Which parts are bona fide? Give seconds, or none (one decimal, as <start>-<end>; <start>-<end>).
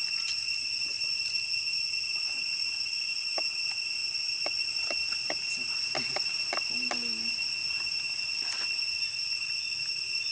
0.0-10.3